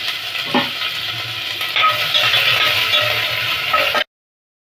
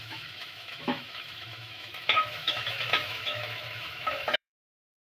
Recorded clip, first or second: first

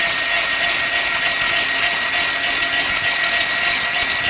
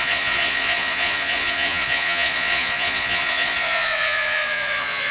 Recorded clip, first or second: first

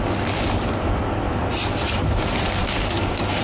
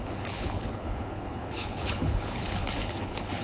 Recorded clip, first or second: first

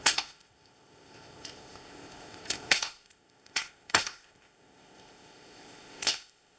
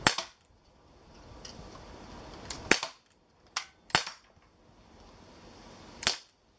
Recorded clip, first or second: second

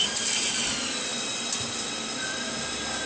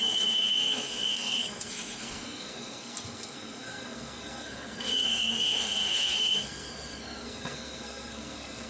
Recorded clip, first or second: first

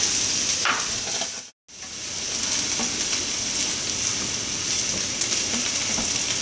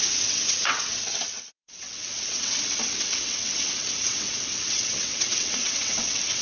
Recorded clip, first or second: first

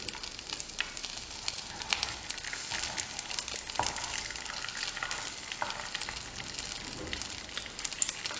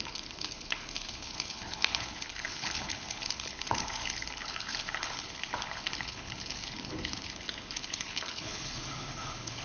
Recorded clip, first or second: first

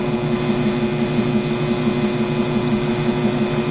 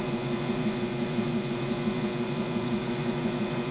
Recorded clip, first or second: first